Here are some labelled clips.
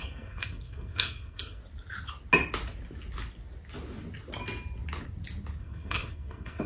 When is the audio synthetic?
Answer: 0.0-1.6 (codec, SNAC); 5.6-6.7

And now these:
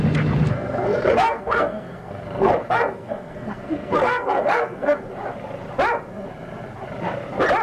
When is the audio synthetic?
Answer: 0.5-5.1 (codec, SNAC)

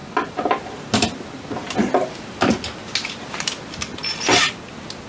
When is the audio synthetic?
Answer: none